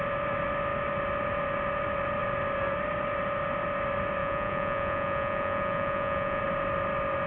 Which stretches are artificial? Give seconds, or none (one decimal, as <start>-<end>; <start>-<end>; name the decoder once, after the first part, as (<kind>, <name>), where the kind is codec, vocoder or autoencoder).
4.2-6.4 (vocoder, Vocos)